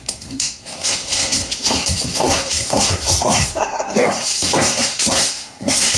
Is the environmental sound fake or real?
fake